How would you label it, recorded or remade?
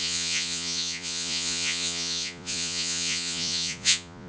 remade